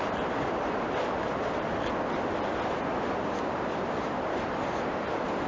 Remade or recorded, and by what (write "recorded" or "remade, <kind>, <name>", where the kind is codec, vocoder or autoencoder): recorded